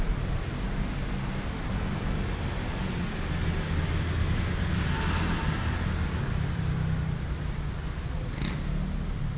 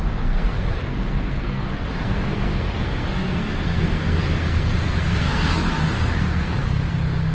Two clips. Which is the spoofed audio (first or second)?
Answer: second